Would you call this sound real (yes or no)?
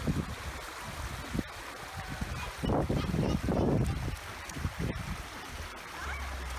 yes